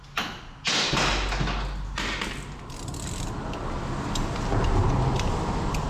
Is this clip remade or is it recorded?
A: recorded